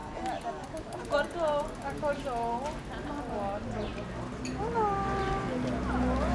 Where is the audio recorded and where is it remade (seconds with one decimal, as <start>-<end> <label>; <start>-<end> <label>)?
0.0-6.3 recorded